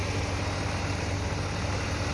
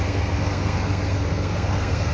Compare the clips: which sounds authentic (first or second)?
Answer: first